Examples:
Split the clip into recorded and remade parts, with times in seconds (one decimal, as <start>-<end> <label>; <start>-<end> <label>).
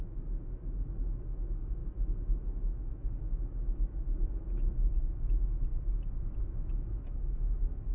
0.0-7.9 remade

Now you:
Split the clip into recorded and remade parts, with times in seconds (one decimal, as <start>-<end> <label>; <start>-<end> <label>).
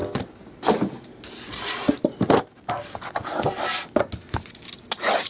0.0-5.3 recorded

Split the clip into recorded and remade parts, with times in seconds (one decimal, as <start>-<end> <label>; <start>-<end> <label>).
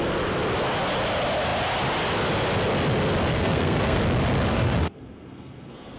0.0-3.3 recorded; 3.3-4.0 remade; 4.0-4.5 recorded; 4.5-6.0 remade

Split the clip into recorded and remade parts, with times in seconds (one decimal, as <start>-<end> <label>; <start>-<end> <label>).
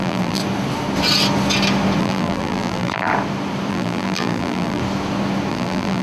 0.0-0.4 remade; 0.4-2.0 recorded; 2.0-3.1 remade; 3.1-3.7 recorded; 3.7-4.8 remade; 4.8-5.5 recorded; 5.5-6.0 remade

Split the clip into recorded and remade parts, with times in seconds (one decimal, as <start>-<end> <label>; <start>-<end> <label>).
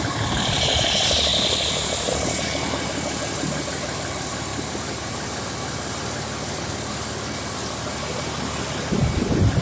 0.0-4.5 remade; 4.5-9.6 recorded